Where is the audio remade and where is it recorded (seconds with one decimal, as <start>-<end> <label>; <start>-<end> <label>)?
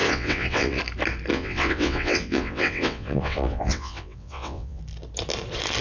0.0-0.8 remade; 0.8-1.3 recorded; 1.3-4.8 remade; 4.8-5.8 recorded